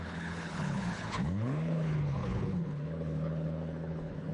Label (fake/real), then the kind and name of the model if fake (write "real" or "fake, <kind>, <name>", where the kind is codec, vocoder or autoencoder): fake, codec, HILCodec